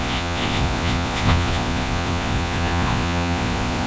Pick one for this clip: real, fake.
fake